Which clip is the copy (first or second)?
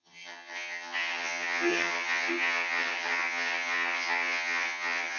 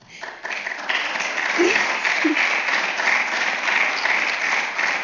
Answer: first